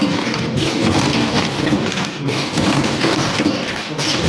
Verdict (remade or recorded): remade